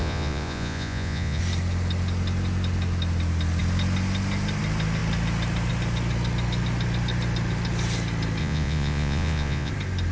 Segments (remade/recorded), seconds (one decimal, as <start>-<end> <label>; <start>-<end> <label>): 0.0-1.4 remade; 1.4-8.4 recorded; 8.4-9.7 remade; 9.7-10.1 recorded